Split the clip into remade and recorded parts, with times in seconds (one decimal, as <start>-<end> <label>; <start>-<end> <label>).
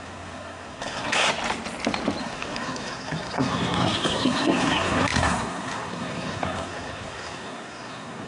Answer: 0.0-1.3 remade; 1.3-2.2 recorded; 2.2-8.3 remade